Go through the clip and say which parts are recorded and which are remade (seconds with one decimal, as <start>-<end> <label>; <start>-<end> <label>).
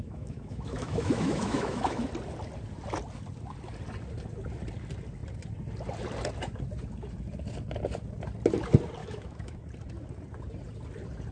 0.0-2.1 remade; 2.1-9.0 recorded; 9.0-9.6 remade; 9.6-11.3 recorded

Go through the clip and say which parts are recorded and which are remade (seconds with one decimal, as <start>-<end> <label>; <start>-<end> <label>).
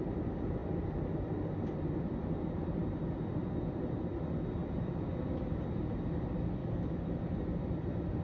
0.0-6.6 recorded; 6.6-7.2 remade; 7.2-8.2 recorded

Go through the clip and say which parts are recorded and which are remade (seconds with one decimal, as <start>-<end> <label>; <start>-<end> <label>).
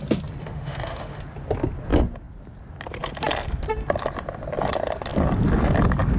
0.0-0.4 recorded; 0.4-1.2 remade; 1.2-6.2 recorded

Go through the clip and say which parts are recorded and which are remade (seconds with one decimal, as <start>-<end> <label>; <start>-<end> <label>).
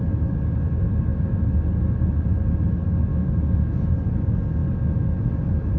0.0-3.1 recorded; 3.1-3.9 remade; 3.9-5.8 recorded